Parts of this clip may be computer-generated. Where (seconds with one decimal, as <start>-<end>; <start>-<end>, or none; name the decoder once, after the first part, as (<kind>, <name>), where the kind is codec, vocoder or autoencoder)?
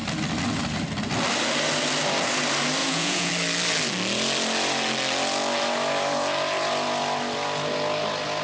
2.8-3.3 (vocoder, Vocos)